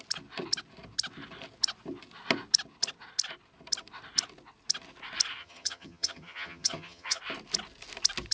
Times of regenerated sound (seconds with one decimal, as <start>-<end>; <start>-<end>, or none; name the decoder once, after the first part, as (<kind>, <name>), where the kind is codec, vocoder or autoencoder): 5.4-7.2 (vocoder, HiFi-GAN)